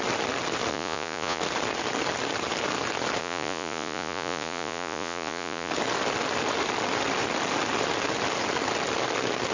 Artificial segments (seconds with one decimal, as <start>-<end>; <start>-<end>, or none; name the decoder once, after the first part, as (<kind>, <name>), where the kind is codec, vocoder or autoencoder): 0.7-1.4 (vocoder, Vocos); 3.2-5.7